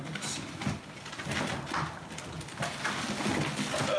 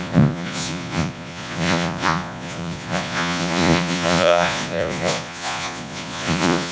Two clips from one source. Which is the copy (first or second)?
second